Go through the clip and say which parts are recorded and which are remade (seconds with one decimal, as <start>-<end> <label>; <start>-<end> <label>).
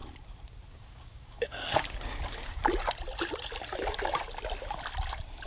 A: 0.0-0.7 recorded; 0.7-2.6 remade; 2.6-5.5 recorded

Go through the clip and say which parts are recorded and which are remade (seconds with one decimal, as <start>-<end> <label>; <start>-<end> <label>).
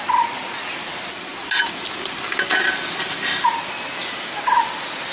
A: 0.0-5.1 recorded